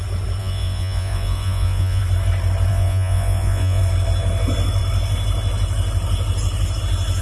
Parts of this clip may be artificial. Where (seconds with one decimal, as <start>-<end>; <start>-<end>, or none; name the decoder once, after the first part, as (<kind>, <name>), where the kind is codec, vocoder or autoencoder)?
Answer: 0.4-2.0 (vocoder, Vocos); 2.7-3.8